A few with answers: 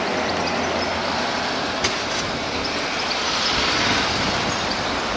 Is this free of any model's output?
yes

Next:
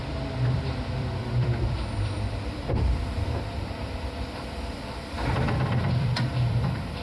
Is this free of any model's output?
no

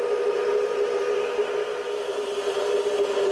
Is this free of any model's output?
yes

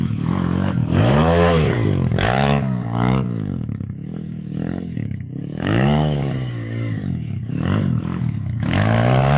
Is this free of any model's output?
no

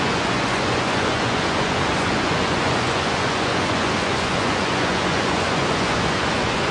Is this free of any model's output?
no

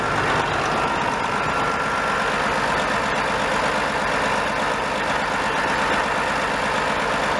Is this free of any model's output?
yes